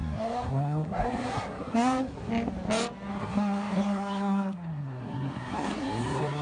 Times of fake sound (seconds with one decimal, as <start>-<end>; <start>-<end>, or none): 0.0-2.3; 3.1-6.4